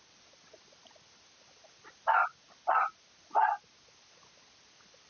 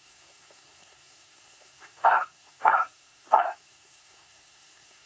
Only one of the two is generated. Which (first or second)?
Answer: second